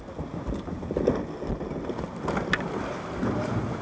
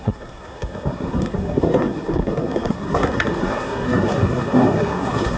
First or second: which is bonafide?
first